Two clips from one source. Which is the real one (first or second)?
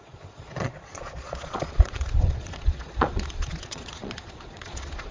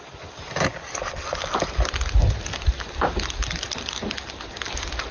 second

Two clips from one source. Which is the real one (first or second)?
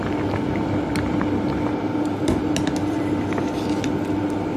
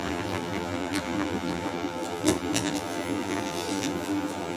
first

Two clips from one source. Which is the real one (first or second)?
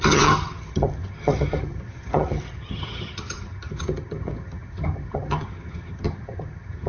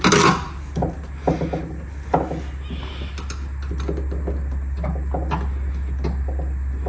second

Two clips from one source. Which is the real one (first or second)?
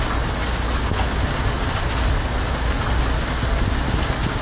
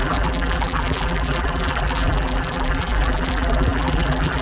first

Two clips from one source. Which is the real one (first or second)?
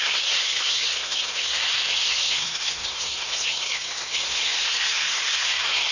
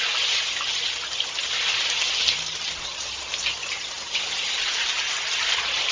second